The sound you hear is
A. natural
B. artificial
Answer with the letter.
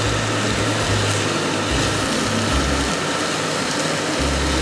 A